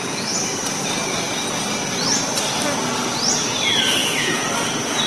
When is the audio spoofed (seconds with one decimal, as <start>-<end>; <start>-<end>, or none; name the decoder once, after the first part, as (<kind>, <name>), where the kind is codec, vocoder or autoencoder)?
4.0-4.5 (vocoder, Vocos)